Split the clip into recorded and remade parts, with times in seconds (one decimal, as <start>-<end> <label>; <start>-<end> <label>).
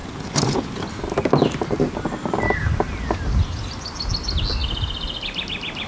0.0-0.9 remade; 0.9-5.9 recorded